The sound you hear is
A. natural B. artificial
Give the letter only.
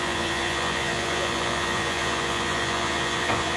B